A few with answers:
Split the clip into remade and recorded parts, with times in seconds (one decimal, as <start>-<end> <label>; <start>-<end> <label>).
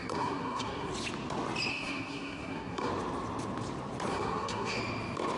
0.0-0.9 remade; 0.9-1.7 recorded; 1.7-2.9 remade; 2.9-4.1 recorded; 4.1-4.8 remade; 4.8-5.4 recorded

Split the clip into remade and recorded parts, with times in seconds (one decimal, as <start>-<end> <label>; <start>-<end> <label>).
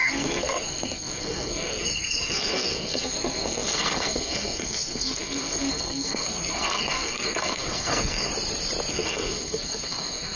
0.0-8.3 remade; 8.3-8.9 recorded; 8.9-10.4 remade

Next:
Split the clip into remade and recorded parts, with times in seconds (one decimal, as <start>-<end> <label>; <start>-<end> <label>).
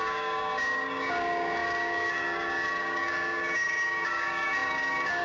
0.0-5.2 remade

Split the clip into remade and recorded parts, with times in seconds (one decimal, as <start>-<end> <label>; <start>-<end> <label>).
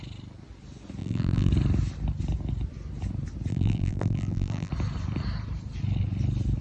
0.0-1.0 recorded; 1.0-1.5 remade; 1.5-3.5 recorded; 3.5-4.7 remade; 4.7-6.6 recorded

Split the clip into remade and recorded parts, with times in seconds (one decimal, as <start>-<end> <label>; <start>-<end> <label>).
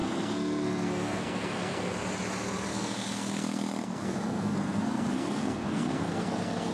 0.0-1.9 remade; 1.9-2.7 recorded; 2.7-6.7 remade